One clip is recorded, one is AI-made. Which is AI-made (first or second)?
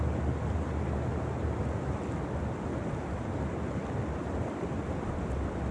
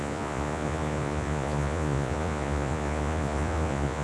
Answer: second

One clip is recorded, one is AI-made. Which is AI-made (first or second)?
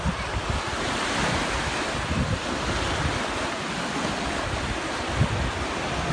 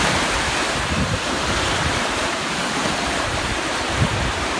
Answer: second